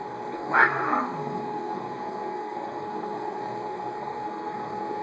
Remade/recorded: remade